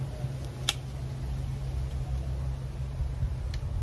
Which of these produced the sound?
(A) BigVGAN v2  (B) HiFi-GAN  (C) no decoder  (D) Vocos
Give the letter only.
C